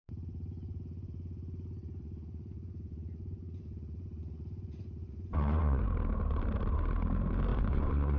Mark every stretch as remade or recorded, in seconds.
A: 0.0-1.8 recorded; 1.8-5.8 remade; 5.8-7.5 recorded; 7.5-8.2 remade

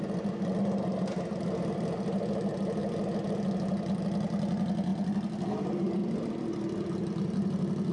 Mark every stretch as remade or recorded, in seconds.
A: 0.0-6.0 recorded; 6.0-7.9 remade

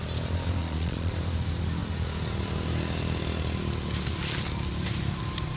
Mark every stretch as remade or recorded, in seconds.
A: 0.0-0.6 recorded; 0.6-1.1 remade; 1.1-5.6 recorded